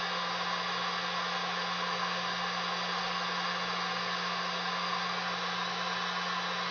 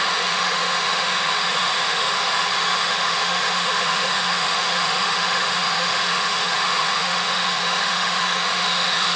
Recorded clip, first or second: first